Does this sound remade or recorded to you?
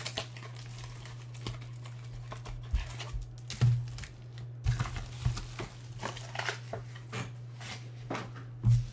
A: recorded